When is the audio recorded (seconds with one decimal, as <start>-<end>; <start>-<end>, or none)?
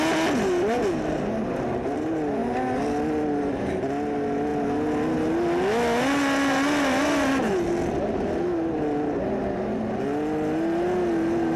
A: 0.0-11.6